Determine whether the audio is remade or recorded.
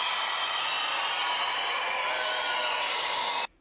recorded